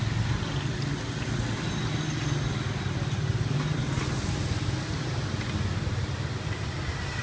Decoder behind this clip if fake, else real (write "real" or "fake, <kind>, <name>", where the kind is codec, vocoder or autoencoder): real